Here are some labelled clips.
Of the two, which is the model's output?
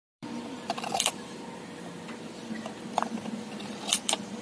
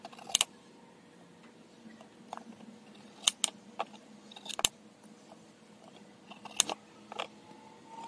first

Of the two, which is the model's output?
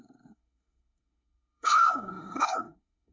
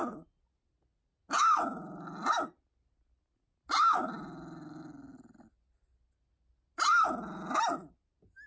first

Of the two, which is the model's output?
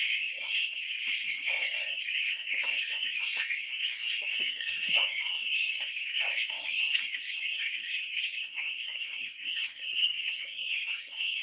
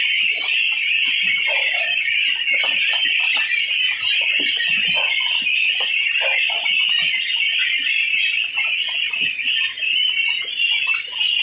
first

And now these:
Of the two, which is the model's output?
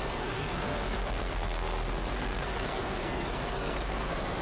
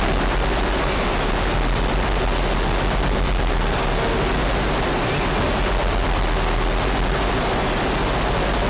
first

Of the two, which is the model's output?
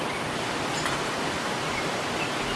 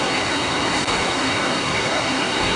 second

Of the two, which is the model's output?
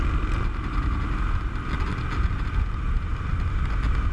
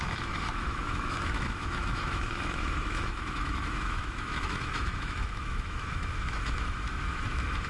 second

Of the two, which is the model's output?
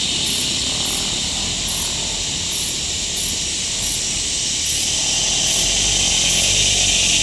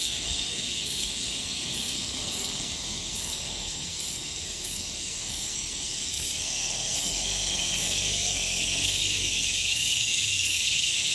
second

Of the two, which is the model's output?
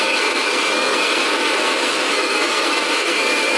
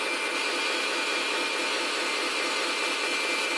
first